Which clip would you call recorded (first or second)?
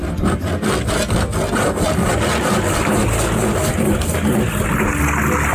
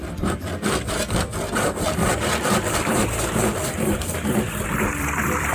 first